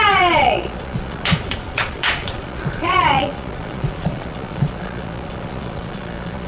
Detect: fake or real fake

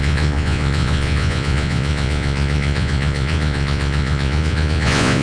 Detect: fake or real fake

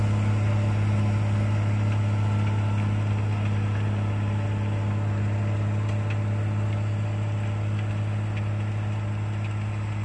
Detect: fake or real real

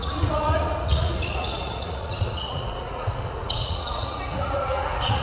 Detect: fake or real fake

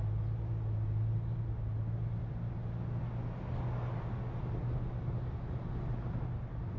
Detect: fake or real real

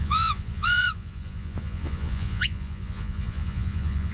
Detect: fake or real fake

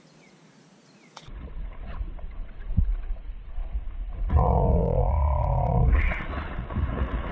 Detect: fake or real fake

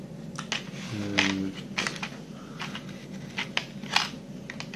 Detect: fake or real real